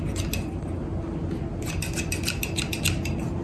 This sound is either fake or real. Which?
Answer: real